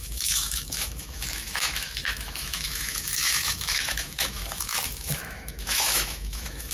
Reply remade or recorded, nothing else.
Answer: remade